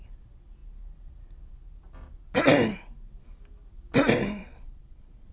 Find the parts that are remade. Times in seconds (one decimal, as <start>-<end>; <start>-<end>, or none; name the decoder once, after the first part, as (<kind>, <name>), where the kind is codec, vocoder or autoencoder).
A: 4.4-5.3 (vocoder, Vocos)